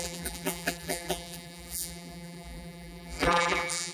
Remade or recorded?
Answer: remade